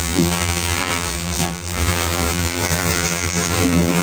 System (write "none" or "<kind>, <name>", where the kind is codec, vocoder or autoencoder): vocoder, BigVGAN v2